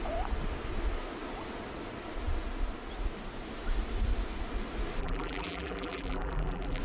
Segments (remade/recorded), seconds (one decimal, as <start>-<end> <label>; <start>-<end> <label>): 0.0-5.0 recorded; 5.0-6.8 remade